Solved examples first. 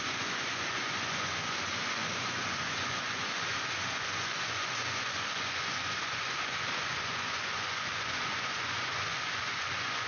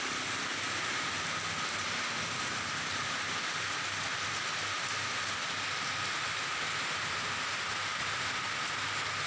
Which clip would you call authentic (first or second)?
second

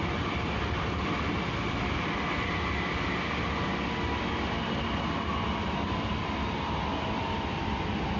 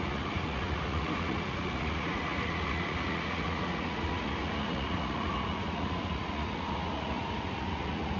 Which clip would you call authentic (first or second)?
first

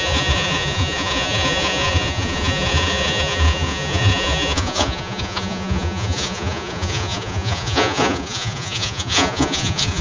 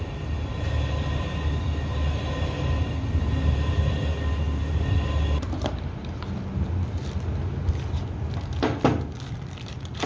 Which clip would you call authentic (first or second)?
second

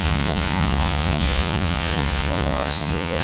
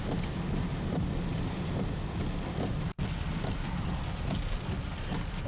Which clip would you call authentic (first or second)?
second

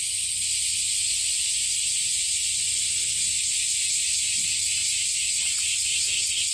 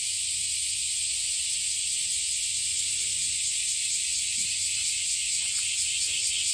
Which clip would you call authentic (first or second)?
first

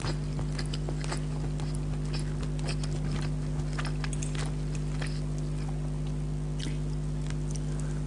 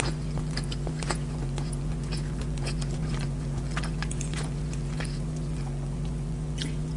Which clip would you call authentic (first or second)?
first